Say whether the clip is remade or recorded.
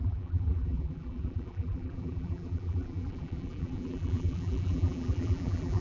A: remade